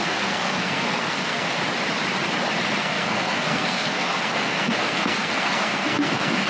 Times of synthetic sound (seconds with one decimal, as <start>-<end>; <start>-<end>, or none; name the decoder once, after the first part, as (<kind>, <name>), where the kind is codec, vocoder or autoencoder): 0.0-1.6 (codec, SNAC); 2.8-6.5